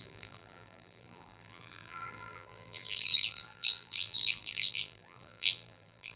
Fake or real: fake